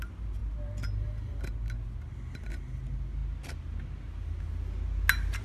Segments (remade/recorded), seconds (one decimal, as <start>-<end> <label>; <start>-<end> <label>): 0.0-5.4 recorded